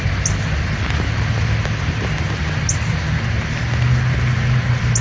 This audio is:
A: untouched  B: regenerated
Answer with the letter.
A